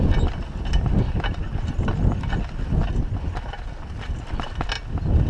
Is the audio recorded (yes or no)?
yes